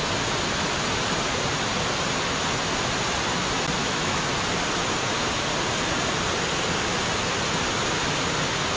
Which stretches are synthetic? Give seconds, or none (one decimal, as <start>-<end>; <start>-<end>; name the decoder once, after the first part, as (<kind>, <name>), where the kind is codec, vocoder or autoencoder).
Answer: 3.8-4.3 (autoencoder, DAC-VAE)